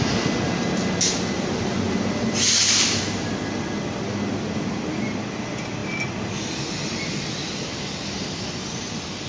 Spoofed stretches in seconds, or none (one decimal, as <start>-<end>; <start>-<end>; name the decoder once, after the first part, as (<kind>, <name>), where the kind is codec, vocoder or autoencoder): none